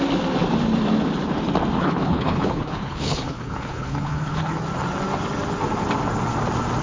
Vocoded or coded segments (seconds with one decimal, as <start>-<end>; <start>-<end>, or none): 1.8-4.5

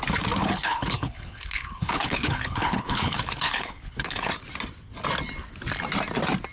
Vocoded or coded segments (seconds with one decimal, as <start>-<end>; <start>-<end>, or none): 0.4-4.3

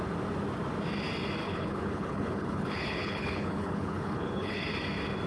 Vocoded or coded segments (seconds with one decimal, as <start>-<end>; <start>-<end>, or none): 1.4-4.6

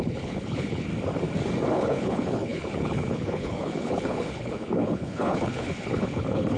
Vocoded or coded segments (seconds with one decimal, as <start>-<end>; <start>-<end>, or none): 0.0-0.9; 1.7-6.6

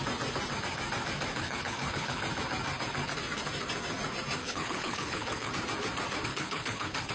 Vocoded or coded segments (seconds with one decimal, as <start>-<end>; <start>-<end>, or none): 1.3-2.2; 4.4-5.5; 6.3-7.1